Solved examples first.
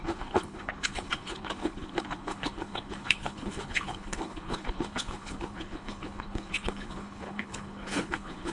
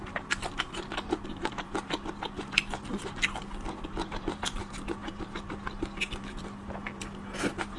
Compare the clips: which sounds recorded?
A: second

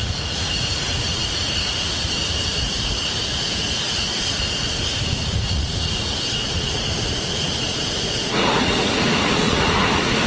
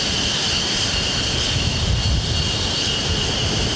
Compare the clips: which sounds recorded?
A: second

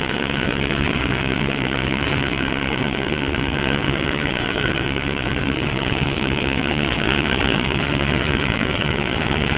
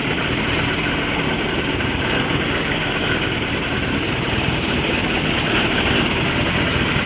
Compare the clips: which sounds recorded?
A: second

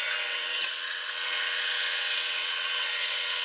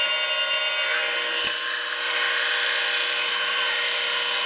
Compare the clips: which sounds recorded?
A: second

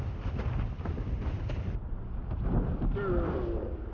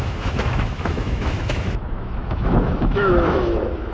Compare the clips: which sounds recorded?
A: first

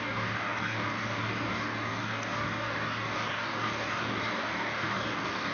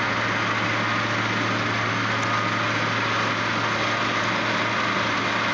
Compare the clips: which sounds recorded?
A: second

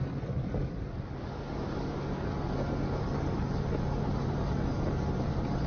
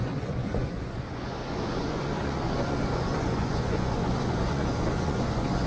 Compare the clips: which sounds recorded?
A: first